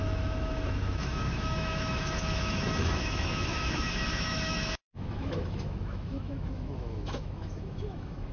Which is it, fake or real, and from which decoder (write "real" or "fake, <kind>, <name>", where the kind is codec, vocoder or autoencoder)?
fake, autoencoder, DAC-VAE